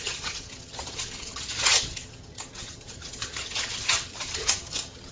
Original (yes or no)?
no